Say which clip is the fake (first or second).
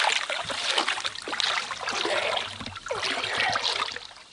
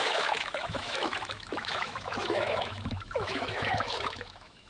second